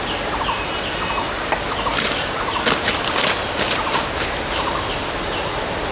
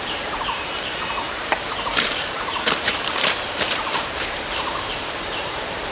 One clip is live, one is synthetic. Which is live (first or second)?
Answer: first